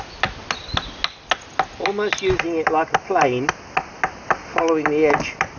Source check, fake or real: real